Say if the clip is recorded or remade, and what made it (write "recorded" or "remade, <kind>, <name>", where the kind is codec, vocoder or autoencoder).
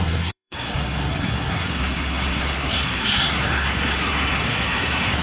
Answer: remade, codec, SNAC